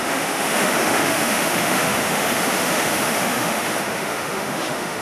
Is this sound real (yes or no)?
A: no